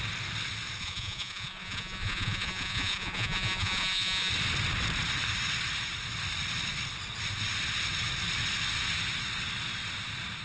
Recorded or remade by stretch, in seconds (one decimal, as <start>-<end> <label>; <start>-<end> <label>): 0.0-0.8 recorded; 0.8-4.3 remade; 4.3-10.4 recorded